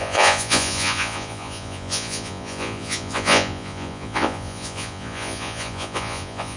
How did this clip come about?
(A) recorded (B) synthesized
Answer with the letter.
B